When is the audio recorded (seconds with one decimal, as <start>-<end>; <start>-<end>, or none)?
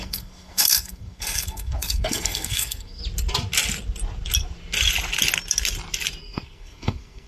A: 3.0-6.2